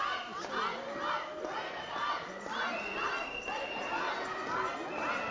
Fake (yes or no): no